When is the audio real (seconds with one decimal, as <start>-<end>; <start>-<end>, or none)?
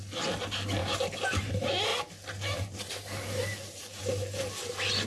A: 0.0-0.8; 1.5-3.5; 4.0-5.1